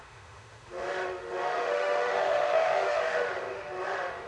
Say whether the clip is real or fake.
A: fake